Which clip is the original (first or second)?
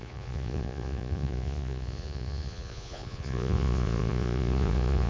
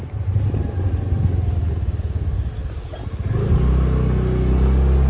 second